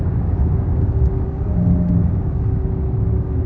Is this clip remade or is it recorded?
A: remade